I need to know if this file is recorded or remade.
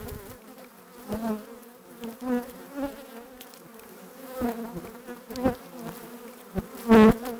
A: recorded